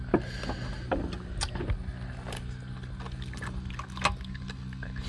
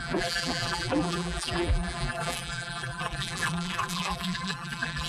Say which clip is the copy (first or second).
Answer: second